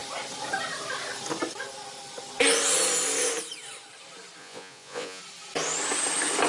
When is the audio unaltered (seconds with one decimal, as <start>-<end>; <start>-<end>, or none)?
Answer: 0.0-4.4; 5.2-6.5